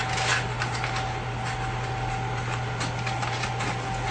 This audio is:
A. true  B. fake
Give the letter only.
A